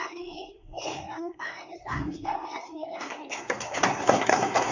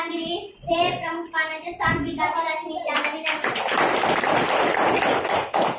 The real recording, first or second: second